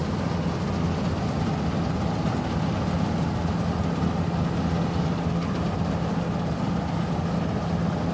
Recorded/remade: recorded